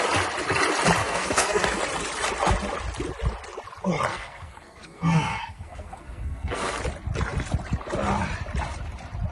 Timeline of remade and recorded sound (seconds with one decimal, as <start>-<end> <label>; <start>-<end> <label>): 0.0-1.0 recorded; 1.0-1.8 remade; 1.8-4.1 recorded; 4.1-6.8 remade; 6.8-9.3 recorded